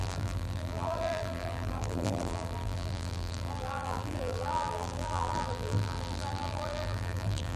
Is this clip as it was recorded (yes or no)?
no